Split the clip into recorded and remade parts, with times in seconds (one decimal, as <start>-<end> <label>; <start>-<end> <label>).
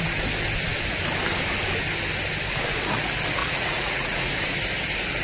0.0-3.4 recorded; 3.4-4.3 remade; 4.3-5.2 recorded